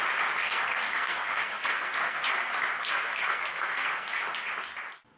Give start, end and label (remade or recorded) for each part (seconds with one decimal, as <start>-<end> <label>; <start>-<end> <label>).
0.0-0.4 recorded; 0.4-2.5 remade; 2.5-2.9 recorded; 2.9-4.2 remade; 4.2-5.2 recorded